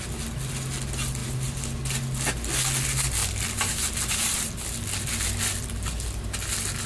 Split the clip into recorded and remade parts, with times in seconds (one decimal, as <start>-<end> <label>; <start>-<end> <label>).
0.0-1.2 recorded; 1.2-1.8 remade; 1.8-3.2 recorded; 3.2-4.5 remade; 4.5-6.9 recorded